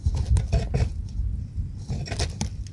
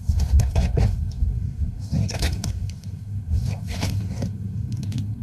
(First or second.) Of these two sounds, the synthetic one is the second